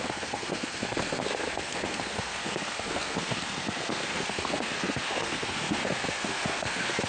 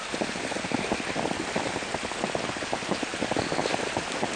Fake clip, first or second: first